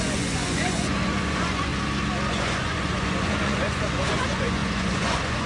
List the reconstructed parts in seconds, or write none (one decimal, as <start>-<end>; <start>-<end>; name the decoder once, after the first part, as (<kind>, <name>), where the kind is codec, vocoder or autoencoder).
0.0-1.7 (vocoder, Vocos); 2.3-5.5